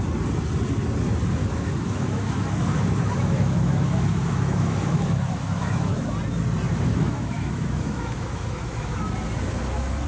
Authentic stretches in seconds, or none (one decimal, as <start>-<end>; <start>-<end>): 0.0-1.4; 6.1-6.9; 9.0-10.1